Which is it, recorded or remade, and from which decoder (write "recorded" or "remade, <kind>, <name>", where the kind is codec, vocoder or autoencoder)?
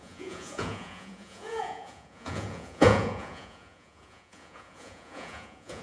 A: remade, vocoder, Vocos